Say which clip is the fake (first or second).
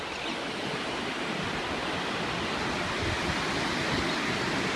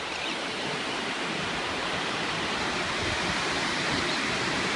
second